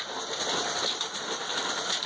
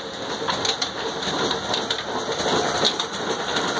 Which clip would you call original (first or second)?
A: second